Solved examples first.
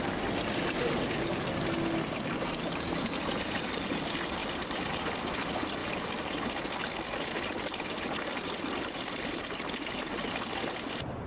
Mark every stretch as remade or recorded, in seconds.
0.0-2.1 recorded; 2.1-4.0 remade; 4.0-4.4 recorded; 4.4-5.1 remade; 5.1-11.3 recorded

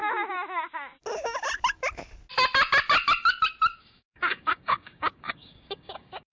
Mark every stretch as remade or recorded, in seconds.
0.0-3.8 recorded; 3.8-6.3 remade

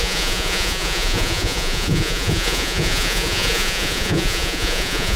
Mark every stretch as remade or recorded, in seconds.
0.0-5.2 remade

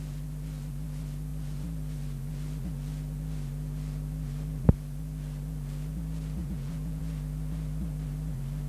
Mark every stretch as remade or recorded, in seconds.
0.0-6.4 recorded; 6.4-7.0 remade; 7.0-8.7 recorded

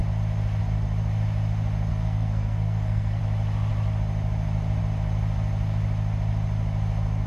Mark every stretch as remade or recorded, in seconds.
0.0-1.9 recorded; 1.9-3.2 remade; 3.2-7.3 recorded

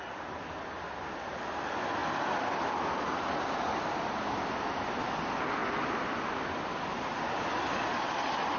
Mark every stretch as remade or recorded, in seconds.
0.0-8.6 recorded